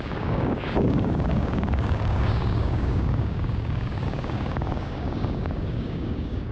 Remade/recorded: remade